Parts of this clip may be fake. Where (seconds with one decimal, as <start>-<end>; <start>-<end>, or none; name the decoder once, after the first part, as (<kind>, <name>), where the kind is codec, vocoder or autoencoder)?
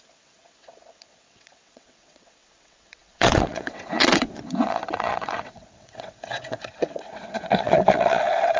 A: 0.0-8.6 (vocoder, WaveNeXt)